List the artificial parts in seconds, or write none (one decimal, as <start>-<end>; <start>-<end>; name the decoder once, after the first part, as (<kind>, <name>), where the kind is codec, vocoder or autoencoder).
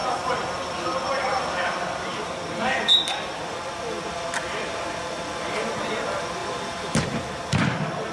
0.0-4.9 (vocoder, BigVGAN v2); 6.4-8.1